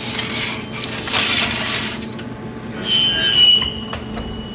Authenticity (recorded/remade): recorded